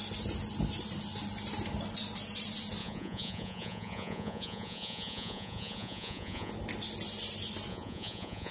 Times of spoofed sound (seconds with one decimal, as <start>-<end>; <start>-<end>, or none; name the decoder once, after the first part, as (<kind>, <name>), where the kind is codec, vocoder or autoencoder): 2.8-6.5 (vocoder, Vocos); 7.7-8.5

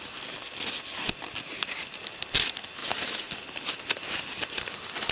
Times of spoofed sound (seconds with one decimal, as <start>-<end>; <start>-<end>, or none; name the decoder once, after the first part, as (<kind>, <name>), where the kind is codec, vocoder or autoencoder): 2.8-3.8 (vocoder, BigVGAN v2)

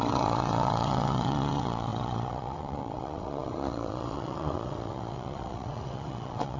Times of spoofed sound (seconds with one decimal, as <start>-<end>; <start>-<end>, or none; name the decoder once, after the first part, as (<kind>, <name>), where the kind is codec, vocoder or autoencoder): 0.0-6.6 (vocoder, WaveNeXt)